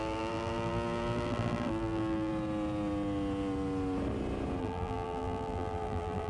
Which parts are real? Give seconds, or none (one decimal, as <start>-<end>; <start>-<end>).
2.3-4.6